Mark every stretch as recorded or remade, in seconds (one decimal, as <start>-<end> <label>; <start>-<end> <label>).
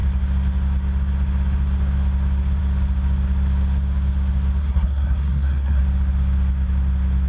0.0-4.6 recorded; 4.6-5.8 remade; 5.8-7.3 recorded